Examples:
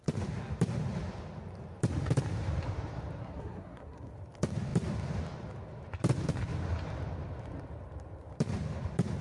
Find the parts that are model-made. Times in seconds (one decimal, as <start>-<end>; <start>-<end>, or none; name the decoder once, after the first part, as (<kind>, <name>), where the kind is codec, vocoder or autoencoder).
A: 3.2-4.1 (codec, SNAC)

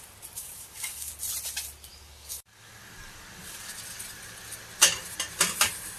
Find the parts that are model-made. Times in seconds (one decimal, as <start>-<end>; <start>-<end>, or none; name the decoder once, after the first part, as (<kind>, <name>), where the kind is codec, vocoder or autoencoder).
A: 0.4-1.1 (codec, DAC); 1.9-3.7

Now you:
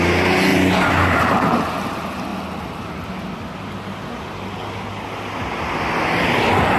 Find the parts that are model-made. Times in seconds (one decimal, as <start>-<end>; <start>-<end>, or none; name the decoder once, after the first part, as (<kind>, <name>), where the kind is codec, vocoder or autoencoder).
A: 0.5-1.4 (vocoder, BigVGAN v2)

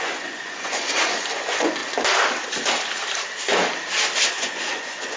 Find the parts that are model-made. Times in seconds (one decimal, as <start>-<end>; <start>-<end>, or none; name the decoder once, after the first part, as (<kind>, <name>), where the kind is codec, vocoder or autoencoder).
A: 0.0-1.8 (vocoder, Vocos); 4.3-5.2

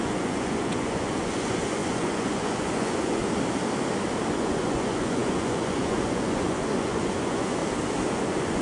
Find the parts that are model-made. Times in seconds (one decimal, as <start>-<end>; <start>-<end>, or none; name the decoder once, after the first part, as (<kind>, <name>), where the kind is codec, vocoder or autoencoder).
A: 0.0-3.2 (vocoder, Vocos); 4.3-7.6; 8.1-8.6

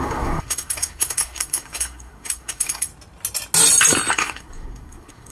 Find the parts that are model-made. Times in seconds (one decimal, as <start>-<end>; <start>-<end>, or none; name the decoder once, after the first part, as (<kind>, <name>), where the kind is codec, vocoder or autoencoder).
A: 0.0-2.9 (codec, SNAC); 4.1-5.3